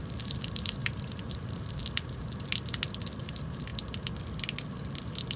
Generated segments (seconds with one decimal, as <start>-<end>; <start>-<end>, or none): 0.0-2.5; 3.2-3.7